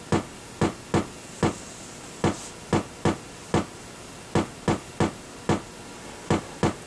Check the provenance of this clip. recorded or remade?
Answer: recorded